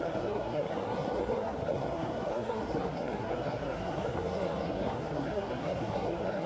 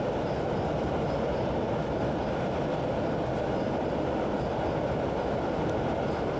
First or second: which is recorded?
second